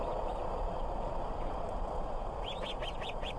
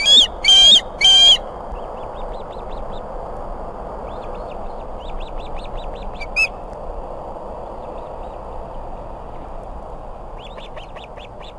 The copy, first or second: first